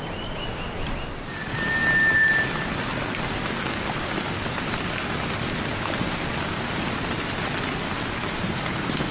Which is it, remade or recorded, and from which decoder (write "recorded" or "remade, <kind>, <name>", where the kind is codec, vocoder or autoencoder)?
recorded